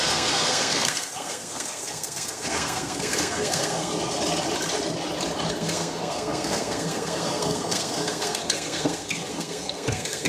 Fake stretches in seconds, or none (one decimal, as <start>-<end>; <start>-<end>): 0.0-3.9; 5.5-10.3